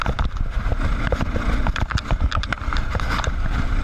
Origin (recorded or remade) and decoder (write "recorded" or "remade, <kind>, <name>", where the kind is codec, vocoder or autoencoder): recorded